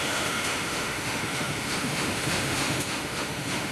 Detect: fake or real fake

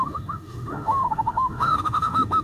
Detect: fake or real fake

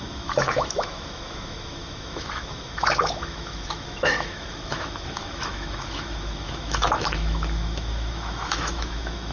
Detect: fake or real fake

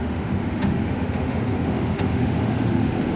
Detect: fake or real fake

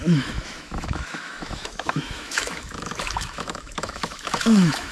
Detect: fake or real fake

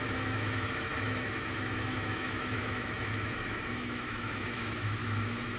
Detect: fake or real fake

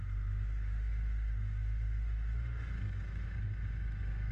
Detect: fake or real fake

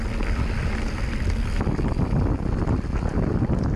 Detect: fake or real real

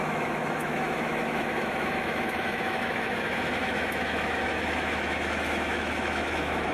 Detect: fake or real fake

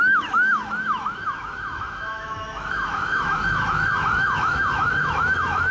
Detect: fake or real fake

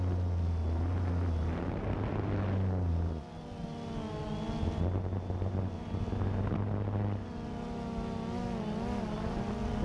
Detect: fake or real real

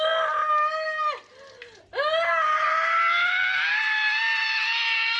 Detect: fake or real real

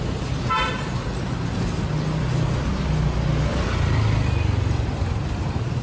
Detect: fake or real real